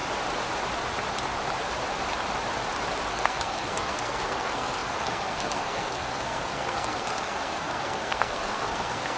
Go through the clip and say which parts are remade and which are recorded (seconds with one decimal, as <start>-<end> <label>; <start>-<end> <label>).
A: 0.0-3.1 recorded; 3.1-9.2 remade